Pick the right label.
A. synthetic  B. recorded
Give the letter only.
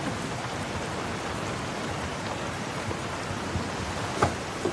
B